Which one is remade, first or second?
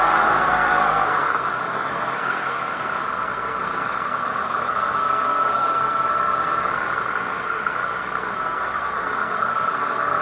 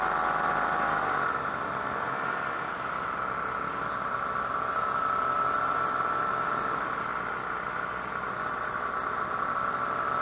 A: first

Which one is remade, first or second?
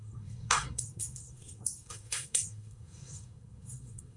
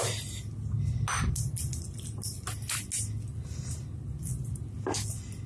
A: first